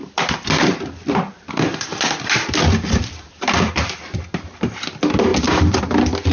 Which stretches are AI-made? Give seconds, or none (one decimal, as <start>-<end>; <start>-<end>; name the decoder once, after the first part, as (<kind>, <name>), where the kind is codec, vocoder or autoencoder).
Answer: 0.0-3.8 (vocoder, BigVGAN v2); 5.3-5.8